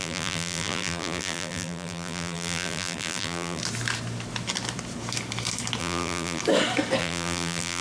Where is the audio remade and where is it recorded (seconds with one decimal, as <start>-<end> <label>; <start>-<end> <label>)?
0.0-3.6 remade; 3.6-5.8 recorded; 5.8-6.4 remade; 6.4-7.0 recorded; 7.0-7.8 remade